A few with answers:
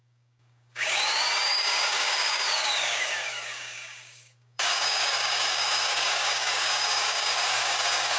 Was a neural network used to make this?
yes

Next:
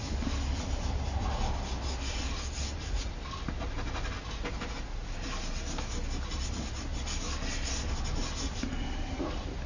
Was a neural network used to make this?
no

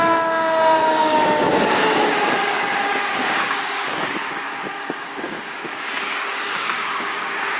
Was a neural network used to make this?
yes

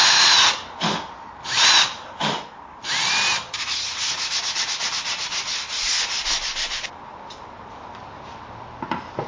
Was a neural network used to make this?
no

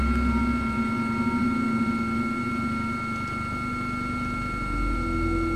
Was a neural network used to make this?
no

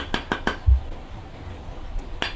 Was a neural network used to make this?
no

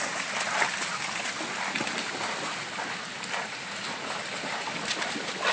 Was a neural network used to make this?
no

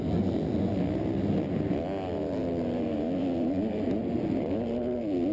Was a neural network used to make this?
no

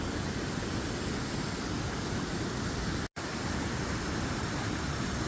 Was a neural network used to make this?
no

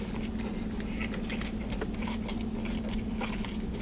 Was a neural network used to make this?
no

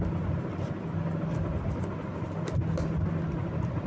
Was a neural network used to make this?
no